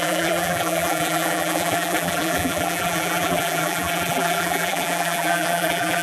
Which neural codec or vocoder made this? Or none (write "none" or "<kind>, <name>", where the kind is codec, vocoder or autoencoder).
vocoder, BigVGAN v2